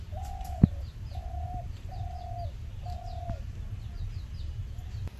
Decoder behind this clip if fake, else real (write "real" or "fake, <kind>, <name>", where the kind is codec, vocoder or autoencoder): fake, vocoder, BigVGAN v2